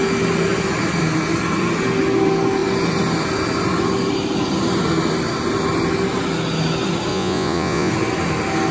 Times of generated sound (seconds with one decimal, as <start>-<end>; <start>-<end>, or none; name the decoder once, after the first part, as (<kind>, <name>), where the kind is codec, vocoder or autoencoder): 7.1-7.9 (vocoder, Vocos)